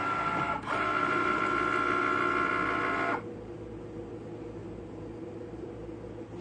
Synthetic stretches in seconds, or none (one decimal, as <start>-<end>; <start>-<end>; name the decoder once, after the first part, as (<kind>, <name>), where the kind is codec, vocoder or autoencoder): 0.0-1.4 (vocoder, BigVGAN v2); 4.6-5.7